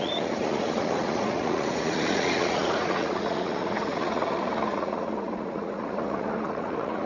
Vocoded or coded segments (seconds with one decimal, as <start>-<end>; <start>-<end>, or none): 0.0-7.1